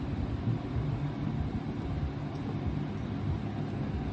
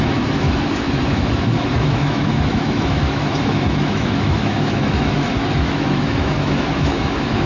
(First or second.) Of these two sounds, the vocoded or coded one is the second